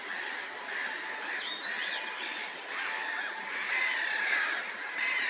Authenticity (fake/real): real